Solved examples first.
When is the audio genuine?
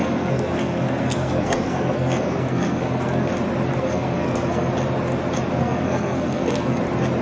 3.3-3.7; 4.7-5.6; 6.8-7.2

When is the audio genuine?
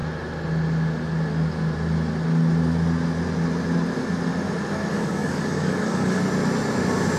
0.0-4.9; 6.2-7.2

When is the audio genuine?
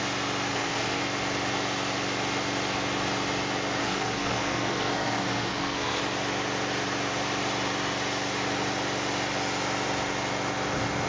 0.0-0.5; 1.0-3.8; 6.0-11.1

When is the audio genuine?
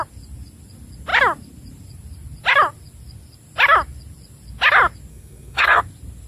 0.0-5.1; 5.8-6.3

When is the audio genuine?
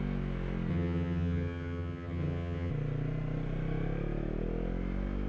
0.0-0.7; 2.7-5.3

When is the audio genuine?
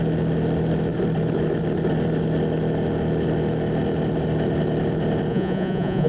0.0-5.3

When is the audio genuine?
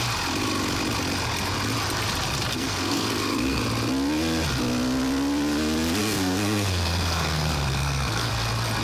0.0-2.5; 3.6-6.0; 8.3-8.8